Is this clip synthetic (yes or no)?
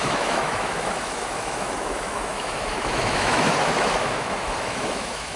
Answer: yes